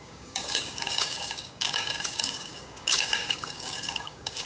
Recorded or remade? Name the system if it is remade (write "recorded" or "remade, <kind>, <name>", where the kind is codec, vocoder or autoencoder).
remade, codec, DAC